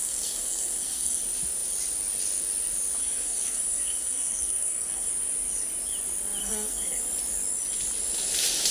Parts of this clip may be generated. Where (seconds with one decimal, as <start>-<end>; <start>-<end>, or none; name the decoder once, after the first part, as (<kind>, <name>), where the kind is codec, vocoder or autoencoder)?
0.0-1.2 (codec, SNAC); 3.0-5.1; 6.4-7.0